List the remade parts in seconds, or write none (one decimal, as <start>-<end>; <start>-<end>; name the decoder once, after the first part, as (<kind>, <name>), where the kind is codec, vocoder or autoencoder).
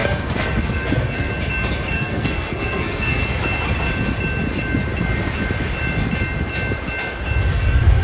0.0-1.3 (codec, SNAC); 1.9-3.2; 7.5-8.0